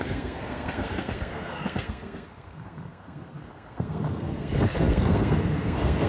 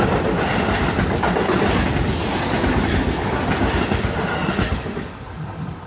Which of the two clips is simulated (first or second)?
first